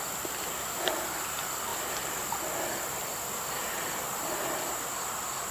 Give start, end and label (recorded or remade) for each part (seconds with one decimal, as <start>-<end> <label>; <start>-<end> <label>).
0.0-5.5 recorded